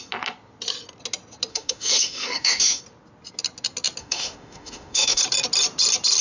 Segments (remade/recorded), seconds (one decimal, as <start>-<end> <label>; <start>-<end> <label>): 0.0-1.5 recorded; 1.5-2.8 remade; 2.8-4.0 recorded; 4.0-5.2 remade; 5.2-6.2 recorded